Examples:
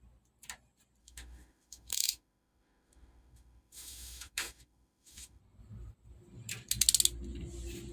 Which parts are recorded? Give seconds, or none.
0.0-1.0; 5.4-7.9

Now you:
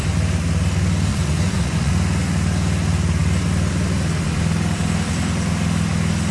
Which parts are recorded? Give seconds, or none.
0.0-1.1; 1.9-6.3

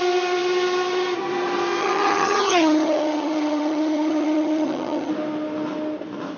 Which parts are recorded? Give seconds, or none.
0.0-1.8; 5.1-6.4

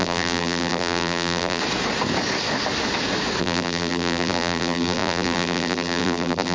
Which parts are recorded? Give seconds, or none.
1.6-3.4

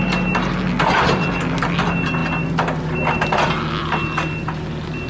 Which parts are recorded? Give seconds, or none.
0.0-5.1

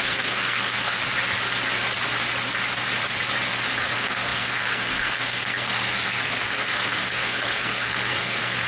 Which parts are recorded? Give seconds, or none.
1.0-3.8

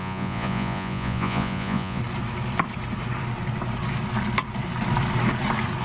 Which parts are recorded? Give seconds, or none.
2.0-5.8